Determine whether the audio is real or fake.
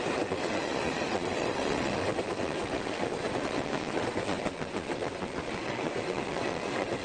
fake